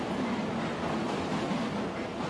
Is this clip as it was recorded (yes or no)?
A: yes